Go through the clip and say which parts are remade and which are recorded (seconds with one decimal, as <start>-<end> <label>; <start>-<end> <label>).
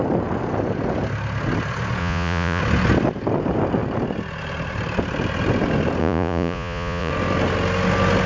0.0-2.0 recorded; 2.0-2.6 remade; 2.6-6.0 recorded; 6.0-7.1 remade; 7.1-8.3 recorded